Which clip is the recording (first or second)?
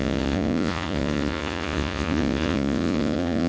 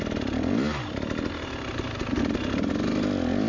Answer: second